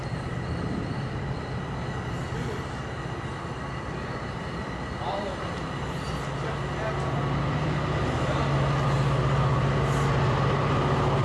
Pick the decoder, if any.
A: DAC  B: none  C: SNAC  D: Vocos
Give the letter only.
B